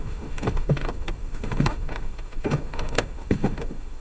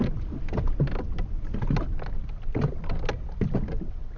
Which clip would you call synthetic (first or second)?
first